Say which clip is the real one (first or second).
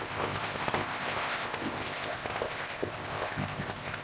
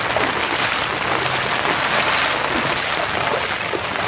second